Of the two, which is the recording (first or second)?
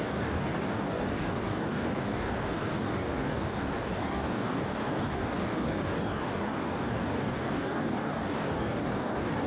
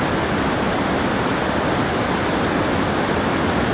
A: second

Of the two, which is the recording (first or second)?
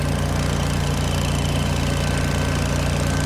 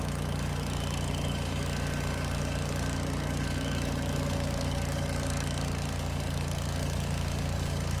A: first